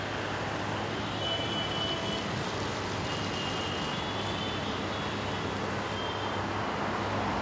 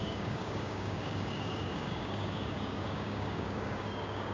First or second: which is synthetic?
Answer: second